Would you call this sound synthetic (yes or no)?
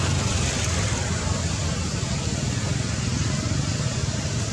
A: yes